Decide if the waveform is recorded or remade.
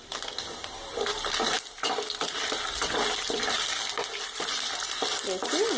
recorded